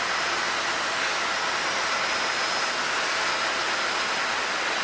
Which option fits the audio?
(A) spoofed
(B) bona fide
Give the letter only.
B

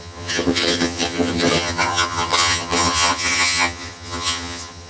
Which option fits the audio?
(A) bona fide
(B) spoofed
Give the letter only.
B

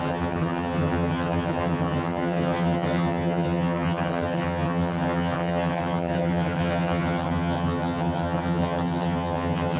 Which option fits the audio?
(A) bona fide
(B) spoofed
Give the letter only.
B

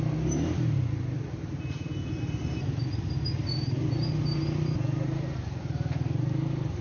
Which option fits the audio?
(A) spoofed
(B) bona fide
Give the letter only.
B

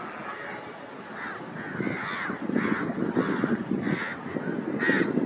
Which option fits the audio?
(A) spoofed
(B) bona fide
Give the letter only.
B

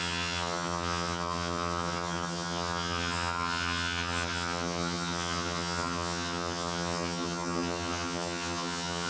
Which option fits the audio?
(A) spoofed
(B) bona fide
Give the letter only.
A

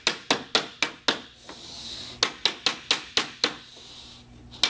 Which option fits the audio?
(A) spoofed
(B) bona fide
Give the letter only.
B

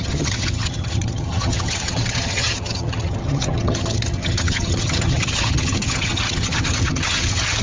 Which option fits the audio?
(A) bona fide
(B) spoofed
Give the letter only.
B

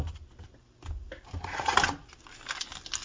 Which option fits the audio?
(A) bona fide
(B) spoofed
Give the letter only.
A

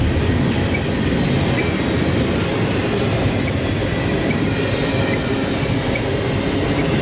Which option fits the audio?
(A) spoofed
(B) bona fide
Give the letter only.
B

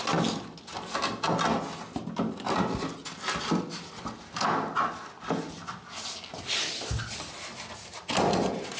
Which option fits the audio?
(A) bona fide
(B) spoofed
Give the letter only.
A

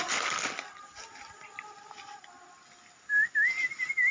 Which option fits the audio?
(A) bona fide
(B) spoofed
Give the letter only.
A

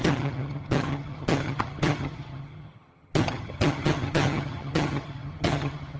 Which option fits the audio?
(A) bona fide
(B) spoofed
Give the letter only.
B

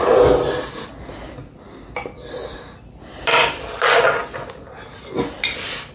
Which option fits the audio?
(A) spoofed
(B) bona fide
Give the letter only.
B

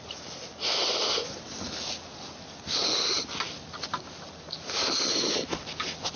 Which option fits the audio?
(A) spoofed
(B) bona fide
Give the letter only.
B